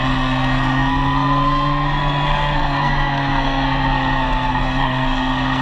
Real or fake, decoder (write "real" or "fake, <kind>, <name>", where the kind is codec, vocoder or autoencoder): fake, codec, SNAC